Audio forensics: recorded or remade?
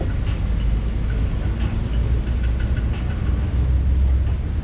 recorded